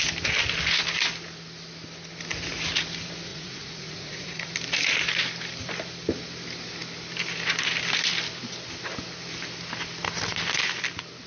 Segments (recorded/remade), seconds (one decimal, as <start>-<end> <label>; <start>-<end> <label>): 0.0-3.3 recorded; 3.3-4.5 remade; 4.5-11.3 recorded

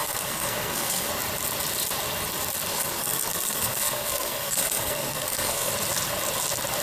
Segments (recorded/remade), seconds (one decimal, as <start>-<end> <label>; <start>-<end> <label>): 0.0-1.1 remade; 1.1-2.7 recorded; 2.7-5.7 remade; 5.7-6.8 recorded

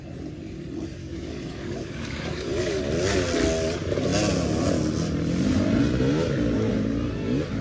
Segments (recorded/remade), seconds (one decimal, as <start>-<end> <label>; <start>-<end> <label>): 0.0-1.0 recorded; 1.0-2.8 remade; 2.8-7.6 recorded

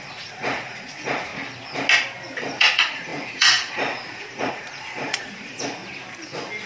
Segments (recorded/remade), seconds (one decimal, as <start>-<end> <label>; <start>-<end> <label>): 0.0-1.3 remade; 1.3-2.6 recorded; 2.6-5.8 remade; 5.8-6.7 recorded

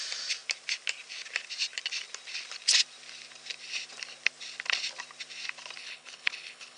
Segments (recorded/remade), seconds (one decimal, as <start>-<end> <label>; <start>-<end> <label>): 0.0-5.8 recorded; 5.8-6.8 remade

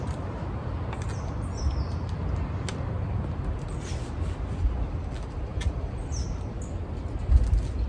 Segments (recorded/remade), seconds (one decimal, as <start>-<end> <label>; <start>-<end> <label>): 0.0-7.9 recorded